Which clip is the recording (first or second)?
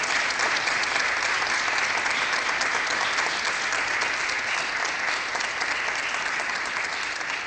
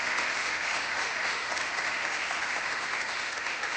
first